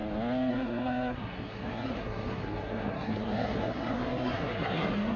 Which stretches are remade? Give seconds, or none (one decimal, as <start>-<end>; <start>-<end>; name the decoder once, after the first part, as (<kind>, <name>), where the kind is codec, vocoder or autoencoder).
0.5-5.2 (codec, SNAC)